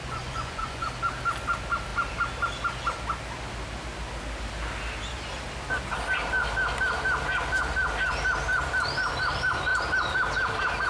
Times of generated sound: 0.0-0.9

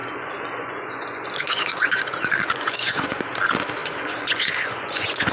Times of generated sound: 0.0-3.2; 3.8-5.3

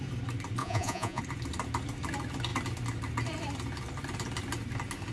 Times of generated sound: 0.6-1.2

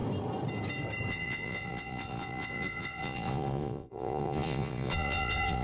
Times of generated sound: 1.1-5.6

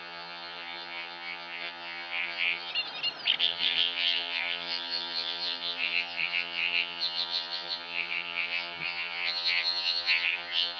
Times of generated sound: 0.0-2.7; 3.4-10.8

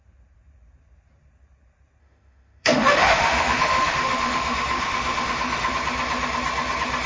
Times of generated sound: 2.0-5.7